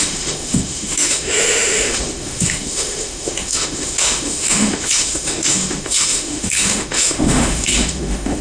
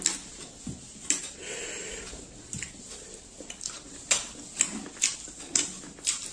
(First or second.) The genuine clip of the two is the second